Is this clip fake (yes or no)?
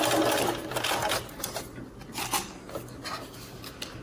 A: no